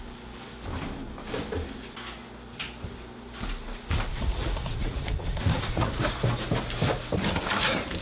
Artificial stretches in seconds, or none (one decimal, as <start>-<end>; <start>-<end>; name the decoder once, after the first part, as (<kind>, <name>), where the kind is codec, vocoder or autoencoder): 4.1-6.0 (vocoder, Vocos)